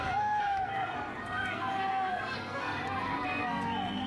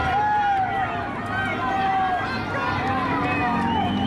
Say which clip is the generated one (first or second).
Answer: first